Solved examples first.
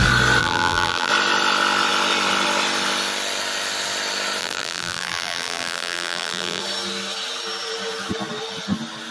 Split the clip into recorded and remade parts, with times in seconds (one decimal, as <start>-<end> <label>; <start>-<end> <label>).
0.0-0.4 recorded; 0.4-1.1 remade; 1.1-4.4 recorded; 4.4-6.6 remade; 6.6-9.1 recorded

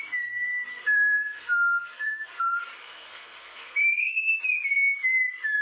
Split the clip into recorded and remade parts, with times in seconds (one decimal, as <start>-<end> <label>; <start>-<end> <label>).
0.0-0.7 recorded; 0.7-2.4 remade; 2.4-2.8 recorded; 2.8-4.4 remade; 4.4-5.6 recorded

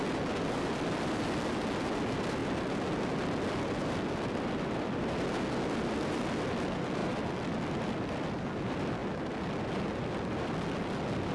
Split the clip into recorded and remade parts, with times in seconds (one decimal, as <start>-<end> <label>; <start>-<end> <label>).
0.0-11.3 recorded

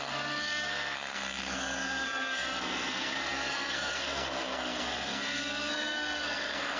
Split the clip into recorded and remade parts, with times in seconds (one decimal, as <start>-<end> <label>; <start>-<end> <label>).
0.0-6.8 remade

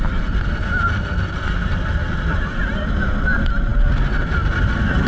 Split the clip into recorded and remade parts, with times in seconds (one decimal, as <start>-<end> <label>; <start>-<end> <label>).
0.0-5.1 recorded